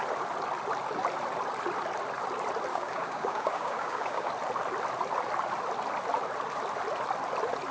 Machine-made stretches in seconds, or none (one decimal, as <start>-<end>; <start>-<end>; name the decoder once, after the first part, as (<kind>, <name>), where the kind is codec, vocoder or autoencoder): 2.7-4.3 (codec, DAC)